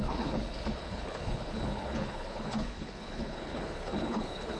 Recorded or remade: remade